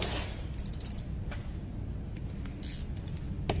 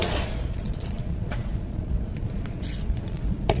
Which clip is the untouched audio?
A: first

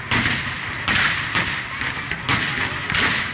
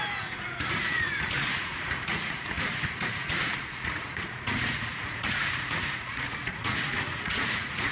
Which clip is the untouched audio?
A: first